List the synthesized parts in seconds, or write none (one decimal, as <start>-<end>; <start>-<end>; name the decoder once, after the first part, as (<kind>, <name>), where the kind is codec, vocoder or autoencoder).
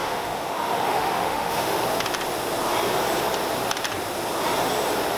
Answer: 0.0-1.8 (autoencoder, DAC-VAE)